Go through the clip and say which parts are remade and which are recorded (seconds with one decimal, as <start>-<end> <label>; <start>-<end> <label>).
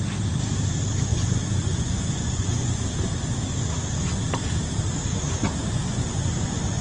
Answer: 0.0-1.1 recorded; 1.1-2.8 remade; 2.8-5.6 recorded; 5.6-6.8 remade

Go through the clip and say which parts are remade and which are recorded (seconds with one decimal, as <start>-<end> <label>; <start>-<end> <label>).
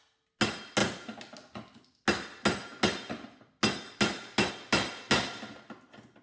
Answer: 0.0-6.2 recorded